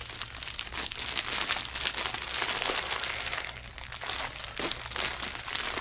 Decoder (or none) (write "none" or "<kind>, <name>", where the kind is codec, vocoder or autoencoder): none